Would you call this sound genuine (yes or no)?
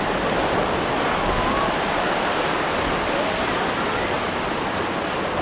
yes